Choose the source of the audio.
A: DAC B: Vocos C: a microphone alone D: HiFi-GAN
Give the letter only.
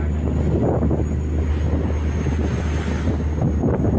C